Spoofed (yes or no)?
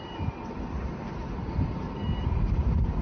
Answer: yes